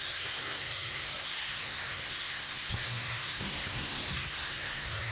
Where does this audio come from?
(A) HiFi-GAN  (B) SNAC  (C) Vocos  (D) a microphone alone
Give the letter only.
B